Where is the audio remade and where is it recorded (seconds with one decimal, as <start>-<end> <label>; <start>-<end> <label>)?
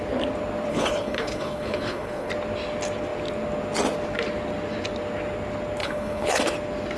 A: 0.0-0.7 recorded; 0.7-2.3 remade; 2.3-5.8 recorded; 5.8-6.4 remade; 6.4-7.0 recorded